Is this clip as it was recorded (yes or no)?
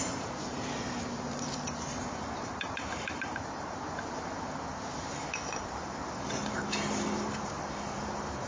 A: no